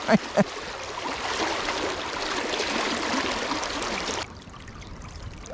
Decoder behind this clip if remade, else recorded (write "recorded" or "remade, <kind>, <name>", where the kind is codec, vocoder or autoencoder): recorded